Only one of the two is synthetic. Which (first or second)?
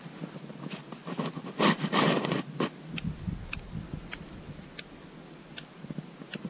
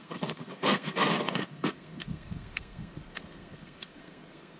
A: second